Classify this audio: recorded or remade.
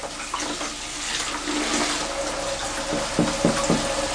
recorded